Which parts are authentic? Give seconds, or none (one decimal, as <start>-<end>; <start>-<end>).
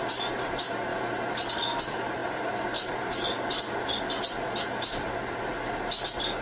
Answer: 0.0-2.2; 3.5-6.4